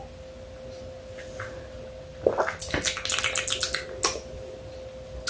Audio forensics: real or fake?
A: real